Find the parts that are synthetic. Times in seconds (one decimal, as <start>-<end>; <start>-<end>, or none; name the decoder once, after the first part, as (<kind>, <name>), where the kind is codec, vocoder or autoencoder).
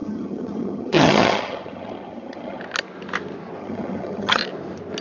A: 0.0-2.6 (vocoder, HiFi-GAN); 3.6-4.4